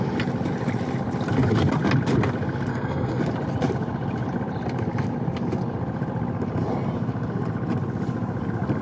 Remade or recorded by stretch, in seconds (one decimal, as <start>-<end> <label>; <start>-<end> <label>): 0.0-2.7 recorded; 2.7-3.2 remade; 3.2-8.8 recorded